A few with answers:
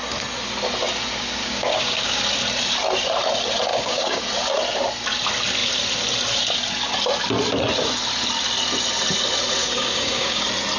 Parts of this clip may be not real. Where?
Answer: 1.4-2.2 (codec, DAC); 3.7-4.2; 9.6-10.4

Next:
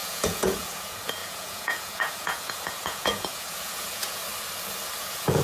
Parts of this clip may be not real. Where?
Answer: 0.0-4.2 (vocoder, Vocos); 5.0-5.4

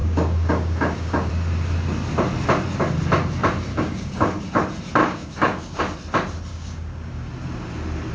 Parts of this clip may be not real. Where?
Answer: 0.0-1.3 (codec, DAC); 3.7-4.4; 5.0-5.8; 6.5-7.3

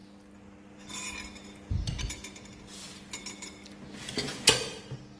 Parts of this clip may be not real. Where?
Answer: none

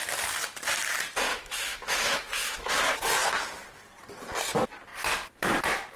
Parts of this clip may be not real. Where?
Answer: 1.3-2.8 (autoencoder, DAC-VAE)

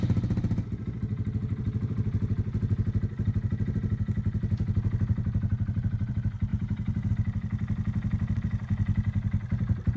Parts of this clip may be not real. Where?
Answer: 5.5-6.1 (vocoder, BigVGAN v2); 6.5-7.1